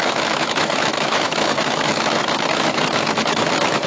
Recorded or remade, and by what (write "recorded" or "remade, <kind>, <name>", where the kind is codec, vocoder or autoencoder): remade, autoencoder, DAC-VAE